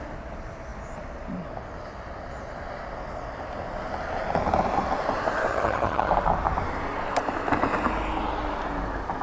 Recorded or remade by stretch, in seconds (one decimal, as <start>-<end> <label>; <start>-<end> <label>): 0.0-5.5 recorded; 5.5-6.1 remade; 6.1-9.2 recorded